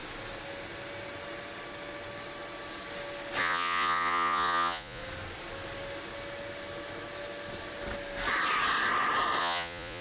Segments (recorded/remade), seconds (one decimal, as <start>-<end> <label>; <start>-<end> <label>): 0.0-3.4 recorded; 3.4-5.0 remade; 5.0-9.4 recorded; 9.4-10.0 remade